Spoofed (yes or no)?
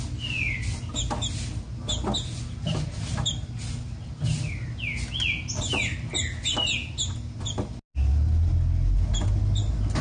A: no